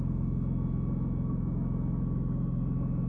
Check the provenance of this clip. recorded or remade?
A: recorded